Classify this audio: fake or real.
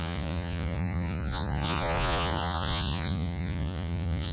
fake